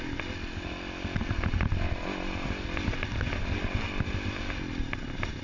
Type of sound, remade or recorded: recorded